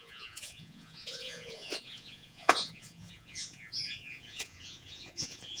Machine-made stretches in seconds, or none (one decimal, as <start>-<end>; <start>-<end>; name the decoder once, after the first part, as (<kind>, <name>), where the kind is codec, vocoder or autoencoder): 0.0-5.6 (vocoder, Vocos)